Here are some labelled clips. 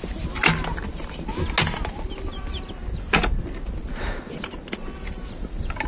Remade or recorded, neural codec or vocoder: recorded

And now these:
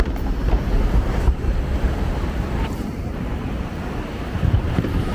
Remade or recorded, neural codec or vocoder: remade, vocoder, BigVGAN v2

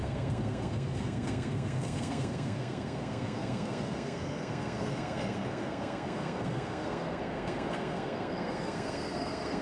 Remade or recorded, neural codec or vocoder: remade, codec, SNAC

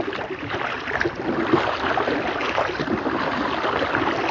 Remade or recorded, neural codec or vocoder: recorded